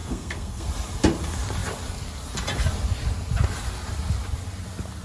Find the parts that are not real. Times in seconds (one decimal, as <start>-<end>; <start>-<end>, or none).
0.0-0.7

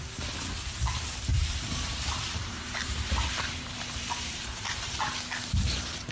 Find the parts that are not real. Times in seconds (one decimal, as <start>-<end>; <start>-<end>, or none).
1.3-5.0

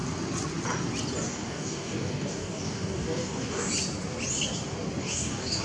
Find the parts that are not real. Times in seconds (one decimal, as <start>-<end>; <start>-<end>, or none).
1.3-3.7; 5.0-5.6

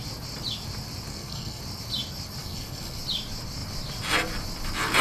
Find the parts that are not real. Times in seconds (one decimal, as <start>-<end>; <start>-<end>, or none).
1.1-1.6; 2.4-3.0

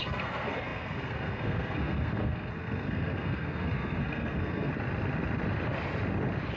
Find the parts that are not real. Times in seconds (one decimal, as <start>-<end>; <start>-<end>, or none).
0.0-4.7

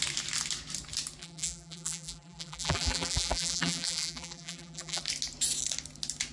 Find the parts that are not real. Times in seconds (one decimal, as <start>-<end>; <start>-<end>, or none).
1.2-5.0